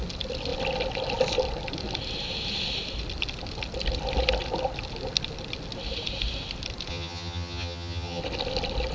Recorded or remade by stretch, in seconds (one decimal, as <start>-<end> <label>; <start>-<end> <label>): 0.0-6.9 recorded; 6.9-8.2 remade; 8.2-8.9 recorded